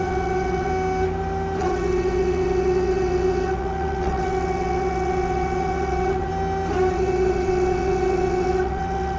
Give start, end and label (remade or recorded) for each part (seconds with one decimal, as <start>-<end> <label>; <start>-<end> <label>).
0.0-0.7 remade; 0.7-1.6 recorded; 1.6-6.3 remade; 6.3-6.9 recorded; 6.9-9.2 remade